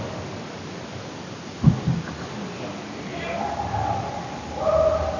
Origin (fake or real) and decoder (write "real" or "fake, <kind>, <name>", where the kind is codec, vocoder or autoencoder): real